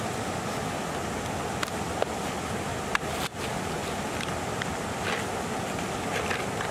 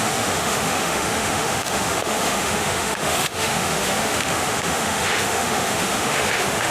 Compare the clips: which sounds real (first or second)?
first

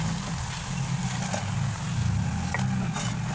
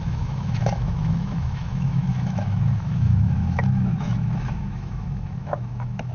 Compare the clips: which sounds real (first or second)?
first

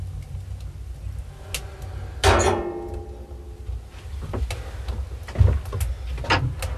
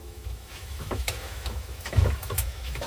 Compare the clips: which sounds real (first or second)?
first